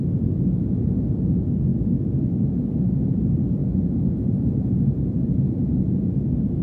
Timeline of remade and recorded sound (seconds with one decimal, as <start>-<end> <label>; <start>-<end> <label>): 0.0-6.6 recorded